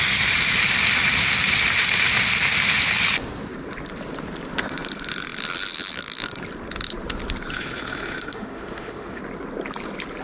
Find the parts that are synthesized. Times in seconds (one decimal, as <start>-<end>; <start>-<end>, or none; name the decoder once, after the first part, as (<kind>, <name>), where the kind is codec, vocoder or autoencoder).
7.5-9.2 (autoencoder, DAC-VAE)